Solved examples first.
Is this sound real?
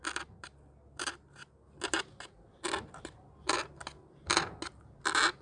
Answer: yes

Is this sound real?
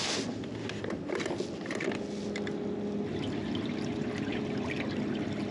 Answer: yes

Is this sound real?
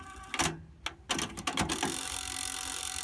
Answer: yes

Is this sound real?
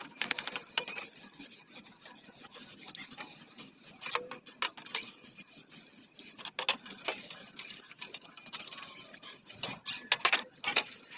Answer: yes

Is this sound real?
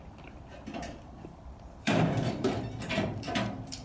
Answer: no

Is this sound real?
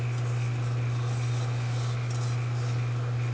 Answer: yes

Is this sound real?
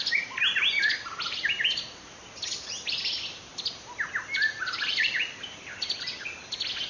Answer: yes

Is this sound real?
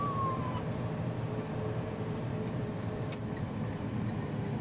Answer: no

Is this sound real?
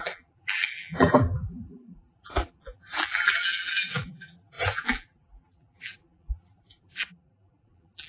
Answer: no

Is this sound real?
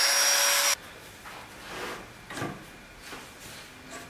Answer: yes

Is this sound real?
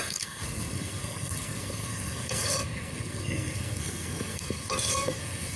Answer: no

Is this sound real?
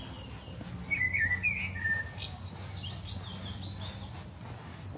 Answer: yes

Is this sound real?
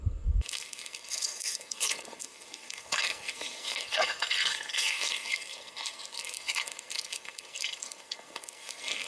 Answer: no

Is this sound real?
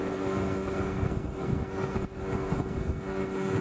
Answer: no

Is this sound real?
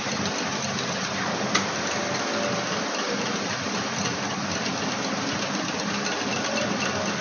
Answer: yes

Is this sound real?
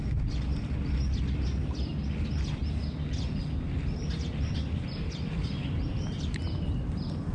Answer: yes